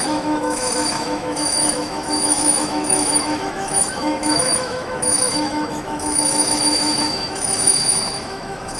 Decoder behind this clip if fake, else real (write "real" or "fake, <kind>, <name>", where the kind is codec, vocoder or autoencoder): fake, autoencoder, DAC-VAE